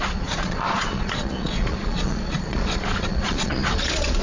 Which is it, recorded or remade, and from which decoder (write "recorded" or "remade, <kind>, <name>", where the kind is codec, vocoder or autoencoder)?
remade, vocoder, Vocos